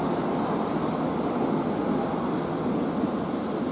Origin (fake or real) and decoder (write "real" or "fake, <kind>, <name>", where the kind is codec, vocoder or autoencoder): real